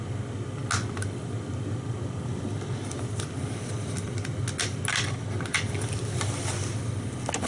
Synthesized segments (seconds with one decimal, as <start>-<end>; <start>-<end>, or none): none